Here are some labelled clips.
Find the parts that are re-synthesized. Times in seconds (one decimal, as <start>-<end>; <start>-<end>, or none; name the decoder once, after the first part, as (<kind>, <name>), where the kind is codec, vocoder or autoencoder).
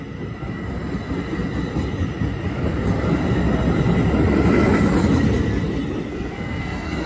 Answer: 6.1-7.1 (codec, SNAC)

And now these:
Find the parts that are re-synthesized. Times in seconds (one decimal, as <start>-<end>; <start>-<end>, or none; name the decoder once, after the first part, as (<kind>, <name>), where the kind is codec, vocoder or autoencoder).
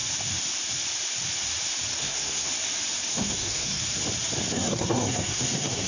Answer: 2.0-2.5 (codec, SNAC); 3.1-3.8; 4.5-5.9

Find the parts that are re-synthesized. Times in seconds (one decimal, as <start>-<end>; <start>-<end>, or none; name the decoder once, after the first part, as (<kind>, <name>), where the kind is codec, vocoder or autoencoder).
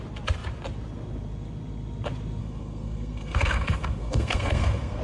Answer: 2.4-5.0 (codec, SNAC)